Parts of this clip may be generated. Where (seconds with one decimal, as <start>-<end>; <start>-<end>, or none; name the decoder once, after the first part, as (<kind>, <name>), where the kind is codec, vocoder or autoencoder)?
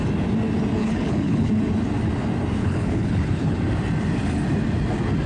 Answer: 0.8-1.5 (codec, HILCodec); 2.6-3.6